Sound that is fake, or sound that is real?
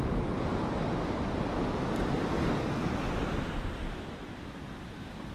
real